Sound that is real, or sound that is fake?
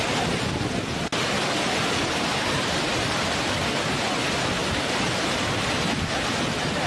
real